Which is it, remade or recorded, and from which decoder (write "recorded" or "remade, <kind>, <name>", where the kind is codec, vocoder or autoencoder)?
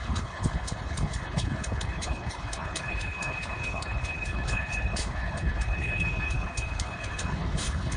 remade, codec, HILCodec